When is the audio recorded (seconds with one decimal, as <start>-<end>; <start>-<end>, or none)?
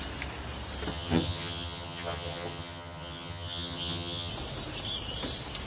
0.0-0.9; 4.3-5.7